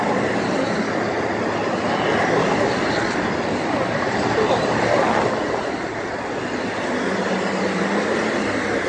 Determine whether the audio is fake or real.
real